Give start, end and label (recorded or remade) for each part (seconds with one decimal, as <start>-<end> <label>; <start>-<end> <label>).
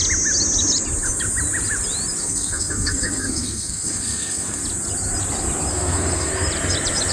0.0-2.2 recorded; 2.2-4.6 remade; 4.6-5.7 recorded; 5.7-6.3 remade; 6.3-7.1 recorded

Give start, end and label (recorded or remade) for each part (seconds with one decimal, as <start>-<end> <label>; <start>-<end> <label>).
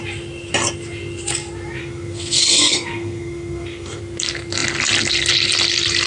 0.0-1.8 recorded; 1.8-4.0 remade; 4.0-6.1 recorded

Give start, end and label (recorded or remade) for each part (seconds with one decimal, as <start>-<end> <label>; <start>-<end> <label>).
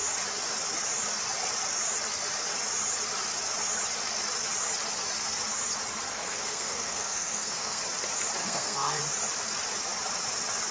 0.0-6.1 recorded; 6.1-7.8 remade; 7.8-8.4 recorded; 8.4-9.0 remade; 9.0-10.7 recorded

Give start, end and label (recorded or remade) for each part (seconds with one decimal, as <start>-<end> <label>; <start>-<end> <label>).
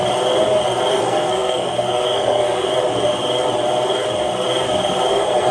0.0-0.9 recorded; 0.9-2.7 remade; 2.7-5.1 recorded; 5.1-5.5 remade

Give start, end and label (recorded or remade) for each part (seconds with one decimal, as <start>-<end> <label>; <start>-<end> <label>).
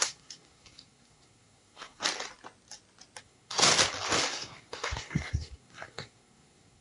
0.0-2.0 remade; 2.0-3.2 recorded; 3.2-3.7 remade; 3.7-4.3 recorded; 4.3-6.8 remade